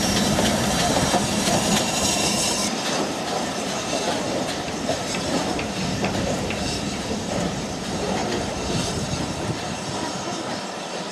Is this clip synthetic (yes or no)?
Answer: yes